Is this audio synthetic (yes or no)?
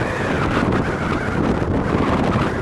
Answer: no